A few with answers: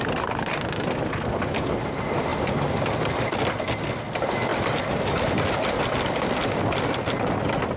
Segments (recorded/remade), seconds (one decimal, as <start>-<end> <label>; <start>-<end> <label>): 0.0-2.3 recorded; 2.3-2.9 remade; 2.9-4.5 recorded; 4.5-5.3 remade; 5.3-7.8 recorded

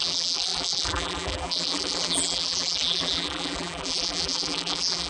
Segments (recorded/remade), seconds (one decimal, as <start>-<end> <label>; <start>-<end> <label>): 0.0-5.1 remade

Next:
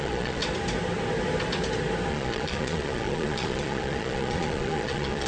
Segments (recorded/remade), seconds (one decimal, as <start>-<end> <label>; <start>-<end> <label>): 0.0-0.4 remade; 0.4-2.1 recorded; 2.1-5.3 remade